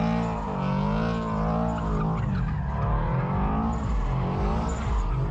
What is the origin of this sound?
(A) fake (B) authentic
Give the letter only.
B